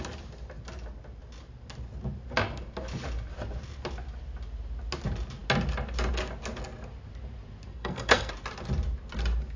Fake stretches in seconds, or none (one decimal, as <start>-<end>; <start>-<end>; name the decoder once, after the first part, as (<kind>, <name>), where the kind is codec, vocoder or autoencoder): 7.7-8.3 (codec, SNAC)